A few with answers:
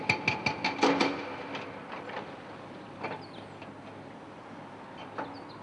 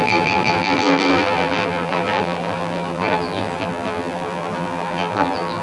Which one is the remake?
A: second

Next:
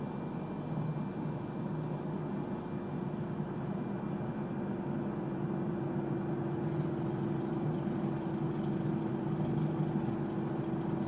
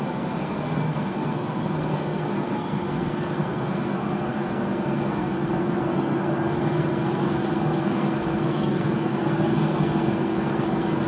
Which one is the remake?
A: second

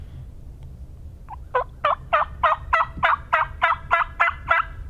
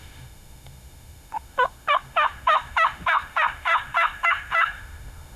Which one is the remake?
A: second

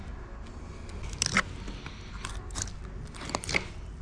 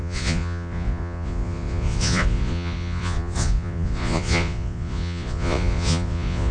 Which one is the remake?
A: second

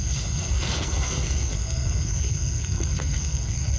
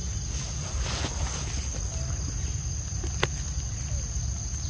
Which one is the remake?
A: first